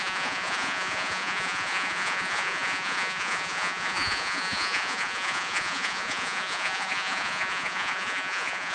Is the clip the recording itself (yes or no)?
no